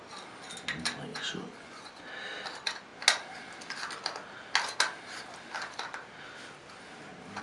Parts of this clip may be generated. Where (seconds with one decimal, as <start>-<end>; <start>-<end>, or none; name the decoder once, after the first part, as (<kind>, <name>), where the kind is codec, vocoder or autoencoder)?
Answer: 1.1-2.1 (vocoder, Vocos)